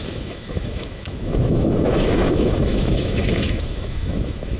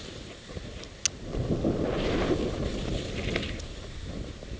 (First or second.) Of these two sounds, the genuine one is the second